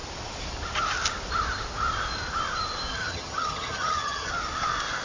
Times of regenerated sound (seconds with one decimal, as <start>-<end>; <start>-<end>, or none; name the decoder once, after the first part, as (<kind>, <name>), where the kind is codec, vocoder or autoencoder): 2.9-4.3 (vocoder, HiFi-GAN)